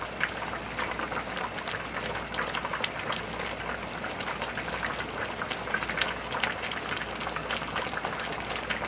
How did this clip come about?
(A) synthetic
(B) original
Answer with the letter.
B